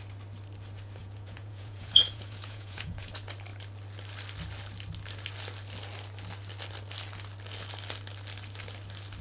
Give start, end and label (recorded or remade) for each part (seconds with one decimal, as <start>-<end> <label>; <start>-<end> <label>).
0.0-1.0 recorded; 1.0-3.1 remade; 3.1-9.2 recorded